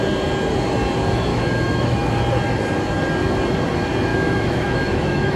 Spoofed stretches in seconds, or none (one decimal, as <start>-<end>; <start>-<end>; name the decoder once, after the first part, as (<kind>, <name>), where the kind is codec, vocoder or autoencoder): 1.3-2.1 (autoencoder, DAC-VAE); 4.1-5.4